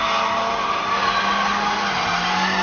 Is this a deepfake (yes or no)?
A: no